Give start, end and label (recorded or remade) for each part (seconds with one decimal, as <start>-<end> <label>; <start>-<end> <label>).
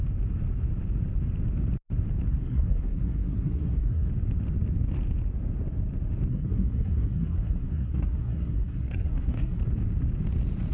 0.0-2.4 recorded; 2.4-4.1 remade; 4.1-6.3 recorded; 6.3-9.6 remade; 9.6-10.7 recorded